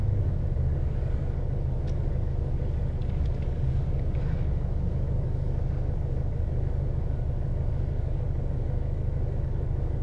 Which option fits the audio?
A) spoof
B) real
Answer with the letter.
A